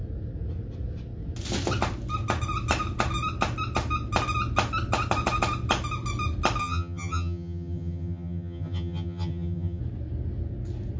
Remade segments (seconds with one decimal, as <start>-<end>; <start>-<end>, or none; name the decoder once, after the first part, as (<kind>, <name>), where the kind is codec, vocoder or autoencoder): 6.6-9.8 (vocoder, HiFi-GAN)